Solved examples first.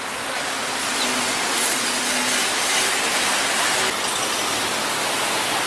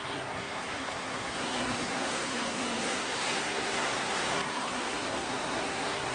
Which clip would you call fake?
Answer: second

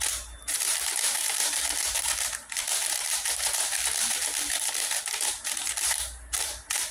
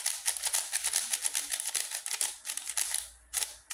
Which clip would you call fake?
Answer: first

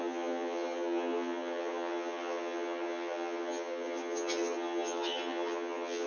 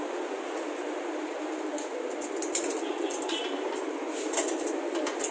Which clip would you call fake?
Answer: first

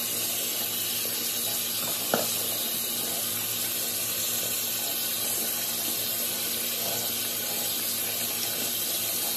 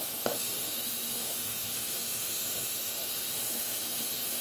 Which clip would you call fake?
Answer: second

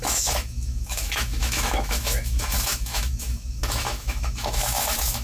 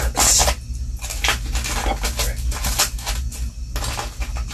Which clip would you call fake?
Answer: first